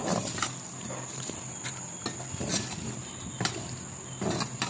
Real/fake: real